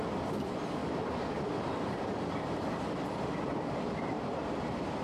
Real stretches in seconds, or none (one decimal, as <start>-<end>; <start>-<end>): 0.0-5.0